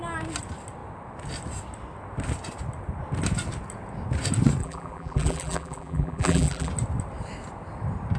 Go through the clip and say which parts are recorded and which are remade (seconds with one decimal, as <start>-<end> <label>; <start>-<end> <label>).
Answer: 0.0-4.6 recorded; 4.6-6.7 remade; 6.7-8.2 recorded